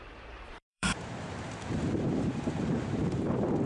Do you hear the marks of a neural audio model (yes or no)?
yes